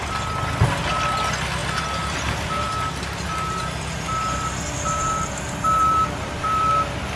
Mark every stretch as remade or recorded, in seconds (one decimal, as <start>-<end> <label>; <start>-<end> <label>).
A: 0.0-5.8 recorded; 5.8-6.7 remade; 6.7-7.2 recorded